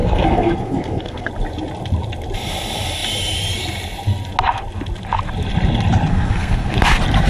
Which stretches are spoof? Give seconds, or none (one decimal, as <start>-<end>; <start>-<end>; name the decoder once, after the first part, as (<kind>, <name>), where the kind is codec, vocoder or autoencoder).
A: 0.0-1.3 (codec, SNAC); 6.1-6.7